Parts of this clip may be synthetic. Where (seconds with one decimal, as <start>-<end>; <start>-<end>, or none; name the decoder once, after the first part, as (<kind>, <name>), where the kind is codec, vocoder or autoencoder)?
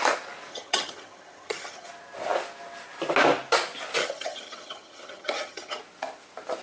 0.5-1.9 (vocoder, HiFi-GAN); 4.0-5.8